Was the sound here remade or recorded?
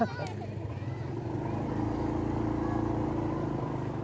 recorded